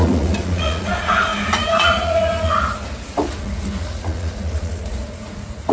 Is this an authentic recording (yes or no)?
no